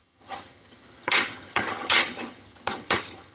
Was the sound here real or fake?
fake